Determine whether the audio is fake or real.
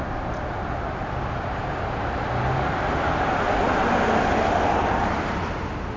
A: real